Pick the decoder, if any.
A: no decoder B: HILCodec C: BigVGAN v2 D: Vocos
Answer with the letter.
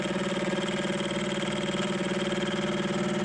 A